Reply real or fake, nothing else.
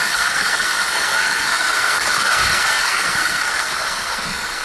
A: fake